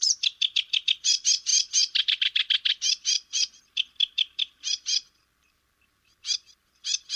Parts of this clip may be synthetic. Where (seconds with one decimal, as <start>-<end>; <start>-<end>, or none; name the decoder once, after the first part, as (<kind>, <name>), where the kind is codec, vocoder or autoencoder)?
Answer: 0.0-7.2 (vocoder, BigVGAN v2)